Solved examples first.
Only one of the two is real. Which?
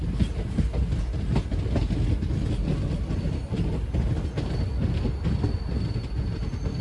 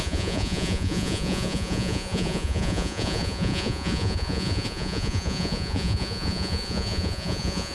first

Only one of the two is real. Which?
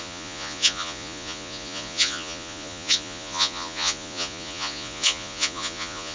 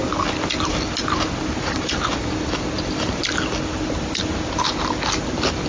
second